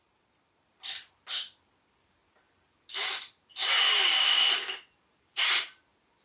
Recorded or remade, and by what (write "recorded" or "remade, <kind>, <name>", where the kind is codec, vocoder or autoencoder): remade, vocoder, BigVGAN v2